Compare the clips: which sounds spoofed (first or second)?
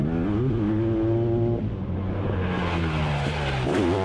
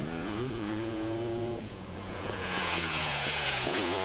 second